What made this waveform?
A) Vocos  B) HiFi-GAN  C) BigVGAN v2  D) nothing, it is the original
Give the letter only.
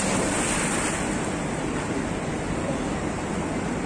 D